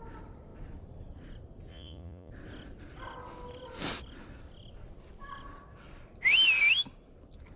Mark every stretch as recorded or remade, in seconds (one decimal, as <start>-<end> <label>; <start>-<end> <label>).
0.0-1.7 recorded; 1.7-2.3 remade; 2.3-7.6 recorded